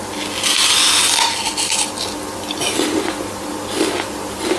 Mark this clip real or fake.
real